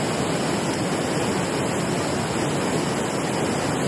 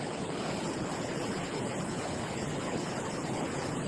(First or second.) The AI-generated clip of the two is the second